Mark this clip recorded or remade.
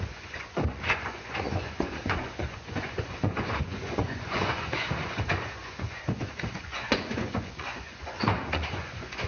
remade